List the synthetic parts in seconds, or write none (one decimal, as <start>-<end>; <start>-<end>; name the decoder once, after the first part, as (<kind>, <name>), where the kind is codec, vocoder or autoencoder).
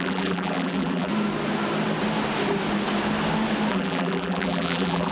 0.0-1.1 (vocoder, BigVGAN v2); 3.7-5.1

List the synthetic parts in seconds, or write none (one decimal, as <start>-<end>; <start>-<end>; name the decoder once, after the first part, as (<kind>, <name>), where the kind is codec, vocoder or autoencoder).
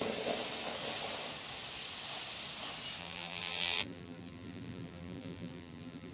3.0-6.1 (vocoder, BigVGAN v2)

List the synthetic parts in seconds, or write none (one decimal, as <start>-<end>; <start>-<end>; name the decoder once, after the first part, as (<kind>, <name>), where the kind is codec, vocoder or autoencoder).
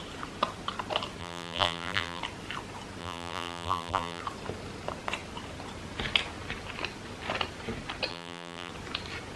1.2-2.2 (vocoder, BigVGAN v2); 3.0-4.2; 8.1-8.7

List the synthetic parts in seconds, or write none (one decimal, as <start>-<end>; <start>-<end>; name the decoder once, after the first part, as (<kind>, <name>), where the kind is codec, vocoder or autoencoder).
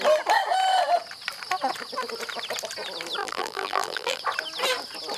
3.2-4.2 (vocoder, BigVGAN v2)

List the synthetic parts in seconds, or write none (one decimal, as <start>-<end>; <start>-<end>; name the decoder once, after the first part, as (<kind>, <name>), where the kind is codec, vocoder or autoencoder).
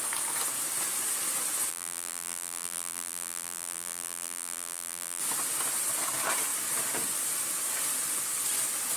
1.7-5.2 (vocoder, BigVGAN v2)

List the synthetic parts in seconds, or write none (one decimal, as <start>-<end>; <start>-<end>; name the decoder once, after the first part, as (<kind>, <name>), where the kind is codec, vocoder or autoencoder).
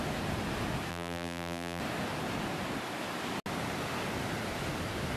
0.9-1.8 (vocoder, BigVGAN v2)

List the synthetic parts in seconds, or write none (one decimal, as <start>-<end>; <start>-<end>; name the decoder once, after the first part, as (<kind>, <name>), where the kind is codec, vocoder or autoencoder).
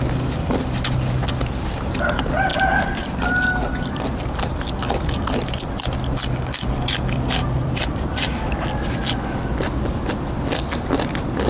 7.4-8.4 (vocoder, BigVGAN v2)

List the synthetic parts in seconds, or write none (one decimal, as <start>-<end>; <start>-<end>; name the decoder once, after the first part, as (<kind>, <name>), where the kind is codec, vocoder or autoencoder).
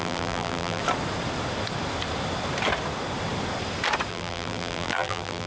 0.0-0.8 (vocoder, BigVGAN v2); 4.1-5.5